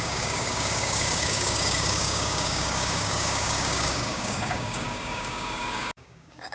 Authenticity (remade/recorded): remade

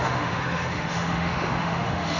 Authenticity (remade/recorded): remade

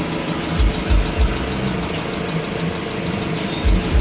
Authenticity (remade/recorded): recorded